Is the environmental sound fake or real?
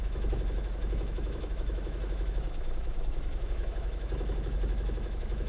fake